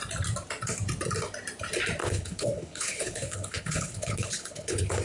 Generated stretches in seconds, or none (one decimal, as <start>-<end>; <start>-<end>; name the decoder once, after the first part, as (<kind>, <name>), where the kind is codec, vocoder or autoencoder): 2.0-5.0 (codec, HILCodec)